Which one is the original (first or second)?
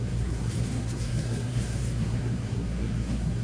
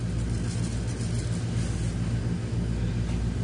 second